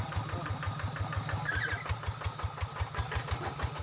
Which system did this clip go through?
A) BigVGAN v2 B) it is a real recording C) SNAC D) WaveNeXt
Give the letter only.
B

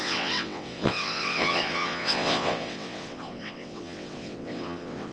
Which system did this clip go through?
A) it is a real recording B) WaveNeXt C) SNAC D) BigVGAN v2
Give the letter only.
B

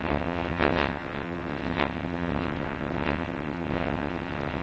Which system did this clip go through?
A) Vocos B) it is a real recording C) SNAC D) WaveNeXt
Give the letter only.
D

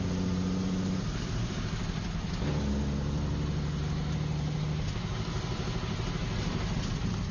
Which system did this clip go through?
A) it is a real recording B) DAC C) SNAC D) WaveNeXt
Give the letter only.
A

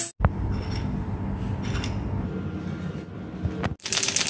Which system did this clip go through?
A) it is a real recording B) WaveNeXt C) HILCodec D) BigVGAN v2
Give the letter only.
A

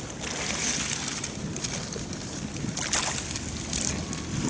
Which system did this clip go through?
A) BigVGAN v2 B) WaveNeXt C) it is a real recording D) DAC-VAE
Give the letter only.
C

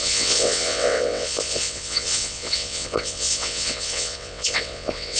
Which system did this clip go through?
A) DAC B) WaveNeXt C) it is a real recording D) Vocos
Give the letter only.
B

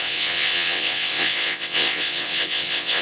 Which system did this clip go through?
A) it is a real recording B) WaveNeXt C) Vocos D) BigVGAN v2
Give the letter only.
B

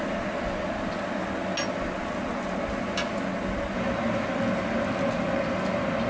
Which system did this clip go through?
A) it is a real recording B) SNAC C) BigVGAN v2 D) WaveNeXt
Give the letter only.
A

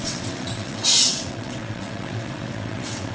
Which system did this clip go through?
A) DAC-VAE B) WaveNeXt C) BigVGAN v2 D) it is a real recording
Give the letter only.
B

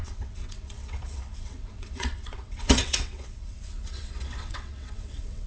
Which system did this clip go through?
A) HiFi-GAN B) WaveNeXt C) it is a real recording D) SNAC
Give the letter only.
B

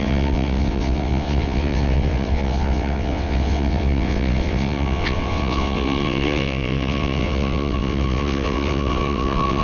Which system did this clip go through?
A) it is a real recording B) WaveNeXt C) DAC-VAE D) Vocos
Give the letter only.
B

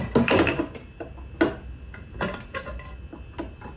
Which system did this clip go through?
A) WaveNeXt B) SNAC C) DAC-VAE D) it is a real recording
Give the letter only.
D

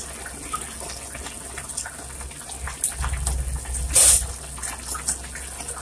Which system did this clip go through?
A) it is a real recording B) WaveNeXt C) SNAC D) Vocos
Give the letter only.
A